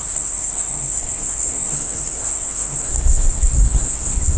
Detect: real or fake fake